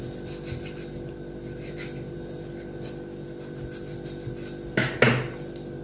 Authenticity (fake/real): real